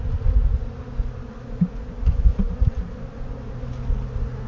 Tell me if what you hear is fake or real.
real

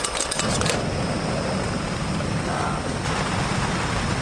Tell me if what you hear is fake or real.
real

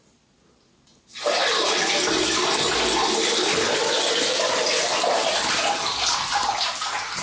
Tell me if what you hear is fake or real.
real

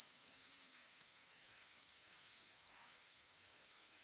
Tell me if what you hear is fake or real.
fake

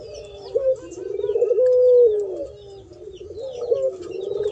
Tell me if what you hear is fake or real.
real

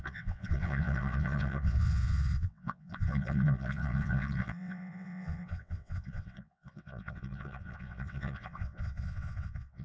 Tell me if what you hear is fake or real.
fake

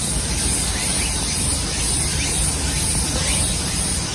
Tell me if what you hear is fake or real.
real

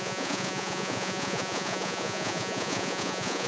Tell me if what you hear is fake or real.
fake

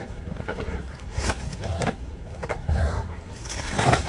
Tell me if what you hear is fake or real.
fake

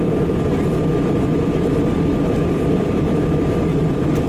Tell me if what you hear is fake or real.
fake